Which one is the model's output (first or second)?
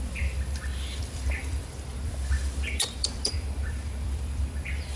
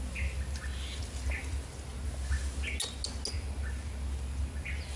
first